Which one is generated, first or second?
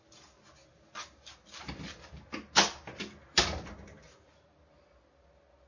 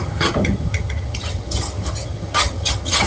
second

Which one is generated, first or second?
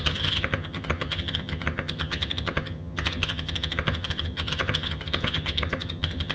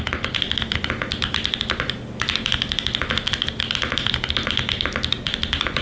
first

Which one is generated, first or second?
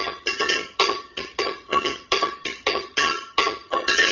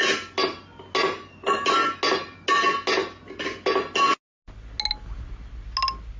first